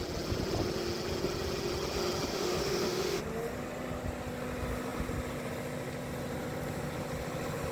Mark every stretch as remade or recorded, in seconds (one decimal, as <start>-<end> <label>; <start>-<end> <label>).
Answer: 0.0-2.3 recorded; 2.3-3.2 remade; 3.2-7.7 recorded